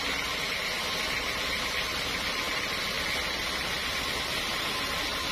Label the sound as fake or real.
real